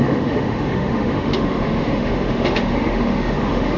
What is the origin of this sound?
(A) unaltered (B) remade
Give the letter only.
B